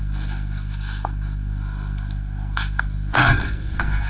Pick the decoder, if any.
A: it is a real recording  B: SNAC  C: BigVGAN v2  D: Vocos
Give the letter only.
B